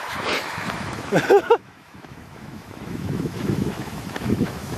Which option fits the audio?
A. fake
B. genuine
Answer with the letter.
A